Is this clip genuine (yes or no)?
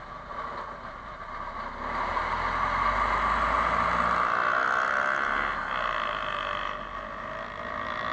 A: yes